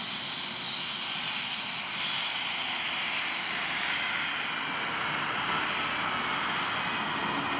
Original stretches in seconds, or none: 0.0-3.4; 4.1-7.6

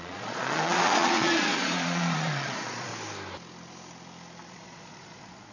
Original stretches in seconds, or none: 2.9-4.5

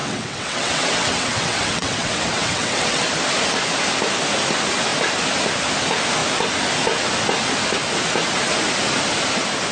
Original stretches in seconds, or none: 3.0-9.7

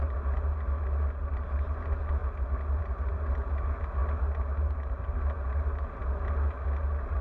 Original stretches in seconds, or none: 0.0-7.2

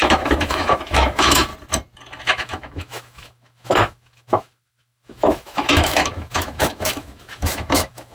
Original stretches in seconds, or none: 1.5-2.2

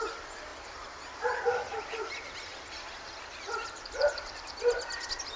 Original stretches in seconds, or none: 0.0-5.4

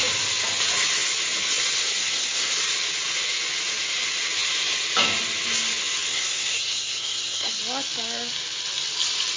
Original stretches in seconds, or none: 0.0-1.8; 2.5-6.1; 7.6-9.4